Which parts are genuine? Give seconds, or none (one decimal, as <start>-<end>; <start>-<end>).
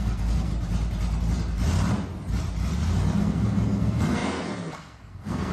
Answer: 0.5-3.2